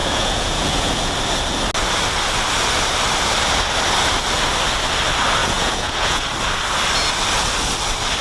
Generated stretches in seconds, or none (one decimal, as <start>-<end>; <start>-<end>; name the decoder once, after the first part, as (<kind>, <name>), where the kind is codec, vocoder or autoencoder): 0.0-1.1 (vocoder, Vocos); 5.4-6.2